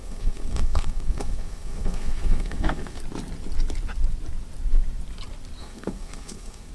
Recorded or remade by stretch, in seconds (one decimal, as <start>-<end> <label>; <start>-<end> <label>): 0.0-3.0 remade; 3.0-5.6 recorded; 5.6-6.7 remade